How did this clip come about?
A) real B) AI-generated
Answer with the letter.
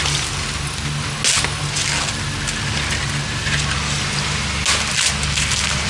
A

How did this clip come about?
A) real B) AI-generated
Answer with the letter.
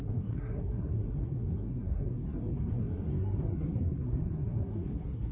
B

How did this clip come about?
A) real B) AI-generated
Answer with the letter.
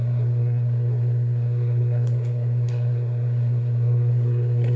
B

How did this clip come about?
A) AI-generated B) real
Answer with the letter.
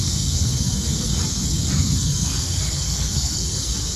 A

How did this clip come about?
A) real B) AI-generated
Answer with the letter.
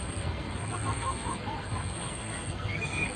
B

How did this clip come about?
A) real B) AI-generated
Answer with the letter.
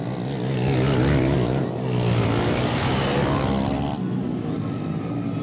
A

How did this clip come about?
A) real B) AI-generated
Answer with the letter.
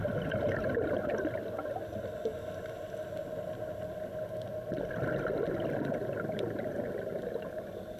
A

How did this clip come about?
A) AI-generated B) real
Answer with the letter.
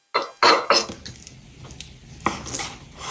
B